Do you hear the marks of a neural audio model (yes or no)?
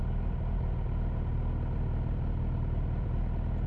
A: no